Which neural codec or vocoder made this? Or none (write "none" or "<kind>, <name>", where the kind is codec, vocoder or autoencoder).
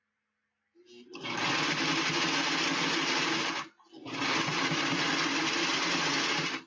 none